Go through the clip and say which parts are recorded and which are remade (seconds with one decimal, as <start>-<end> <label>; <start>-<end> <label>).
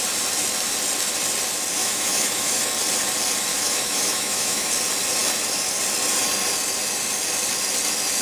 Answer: 0.0-1.8 recorded; 1.8-2.6 remade; 2.6-3.5 recorded; 3.5-4.7 remade; 4.7-8.2 recorded